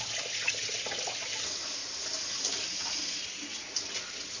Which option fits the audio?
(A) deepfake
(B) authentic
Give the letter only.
B